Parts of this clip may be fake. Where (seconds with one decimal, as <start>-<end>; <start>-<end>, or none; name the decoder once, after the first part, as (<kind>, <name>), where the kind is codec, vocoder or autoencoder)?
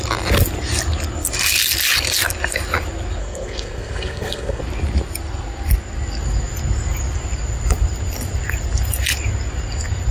3.2-4.6 (codec, SNAC)